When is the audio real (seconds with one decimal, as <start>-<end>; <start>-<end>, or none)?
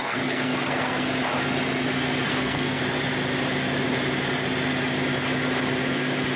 1.1-2.3; 2.8-6.4